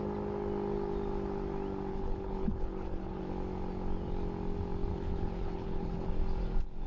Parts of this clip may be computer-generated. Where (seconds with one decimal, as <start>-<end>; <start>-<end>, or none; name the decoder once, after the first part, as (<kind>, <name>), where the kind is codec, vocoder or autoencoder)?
1.9-3.2 (codec, HILCodec); 4.9-6.1